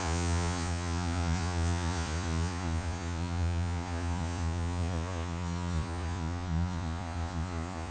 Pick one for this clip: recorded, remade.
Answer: remade